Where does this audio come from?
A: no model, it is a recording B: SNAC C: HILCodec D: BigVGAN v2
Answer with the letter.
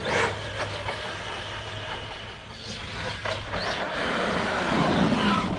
A